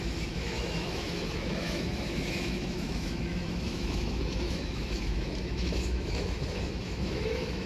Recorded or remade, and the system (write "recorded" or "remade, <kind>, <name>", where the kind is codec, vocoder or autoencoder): remade, autoencoder, DAC-VAE